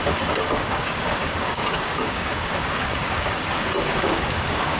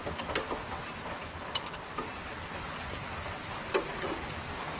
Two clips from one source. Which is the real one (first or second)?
second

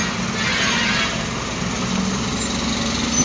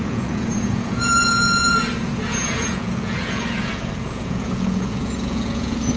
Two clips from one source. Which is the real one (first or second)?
first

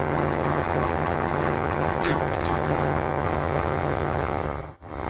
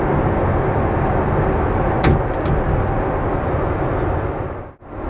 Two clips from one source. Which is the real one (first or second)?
second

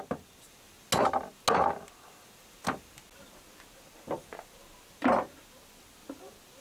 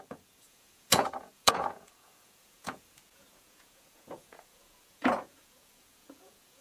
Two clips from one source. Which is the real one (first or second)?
first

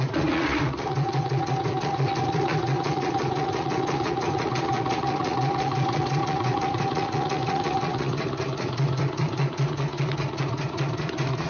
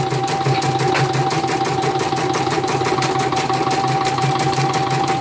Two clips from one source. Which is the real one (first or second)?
second